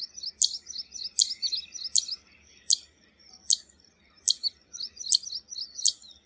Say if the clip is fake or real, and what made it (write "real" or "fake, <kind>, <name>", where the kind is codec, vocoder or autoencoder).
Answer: real